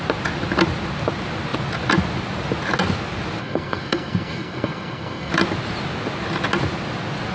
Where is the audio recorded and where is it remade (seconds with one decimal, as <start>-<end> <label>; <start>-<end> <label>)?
0.0-3.4 recorded; 3.4-5.3 remade; 5.3-7.3 recorded

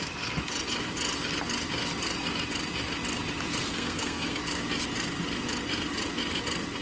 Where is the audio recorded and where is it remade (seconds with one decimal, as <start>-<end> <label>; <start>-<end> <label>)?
0.0-3.7 recorded; 3.7-4.4 remade; 4.4-6.8 recorded

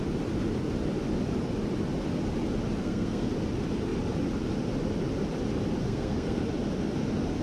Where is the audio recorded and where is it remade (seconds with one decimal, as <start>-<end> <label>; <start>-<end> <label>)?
0.0-2.8 recorded; 2.8-3.3 remade; 3.3-5.8 recorded; 5.8-6.4 remade; 6.4-7.4 recorded

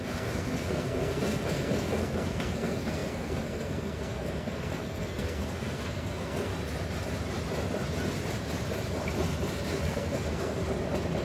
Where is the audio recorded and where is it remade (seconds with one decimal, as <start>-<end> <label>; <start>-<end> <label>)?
0.0-6.5 remade; 6.5-9.7 recorded; 9.7-10.6 remade; 10.6-11.2 recorded

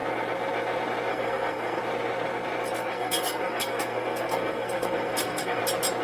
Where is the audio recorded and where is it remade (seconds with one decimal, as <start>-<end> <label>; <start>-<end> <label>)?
0.0-1.1 recorded; 1.1-1.8 remade; 1.8-2.8 recorded; 2.8-5.6 remade; 5.6-6.0 recorded

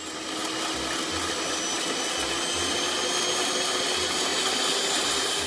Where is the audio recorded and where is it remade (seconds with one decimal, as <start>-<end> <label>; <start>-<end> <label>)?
0.0-5.5 recorded

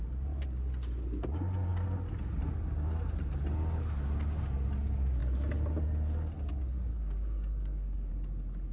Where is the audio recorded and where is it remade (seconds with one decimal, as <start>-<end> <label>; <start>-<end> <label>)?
0.0-6.9 recorded; 6.9-8.1 remade; 8.1-8.7 recorded